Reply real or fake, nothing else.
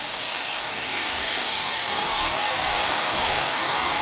fake